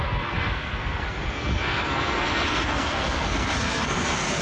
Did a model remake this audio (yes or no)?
yes